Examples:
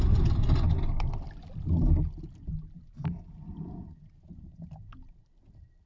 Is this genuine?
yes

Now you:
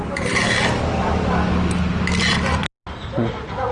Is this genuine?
yes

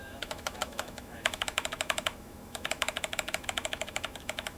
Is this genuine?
no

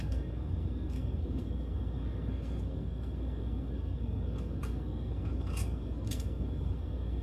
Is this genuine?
no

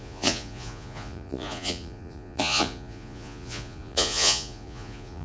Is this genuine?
no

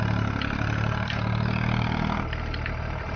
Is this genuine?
yes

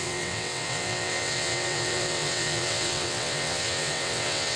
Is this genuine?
no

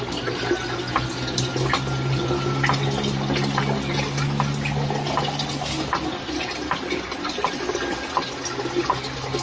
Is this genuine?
yes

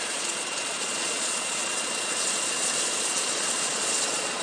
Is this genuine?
no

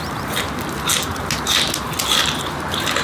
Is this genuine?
yes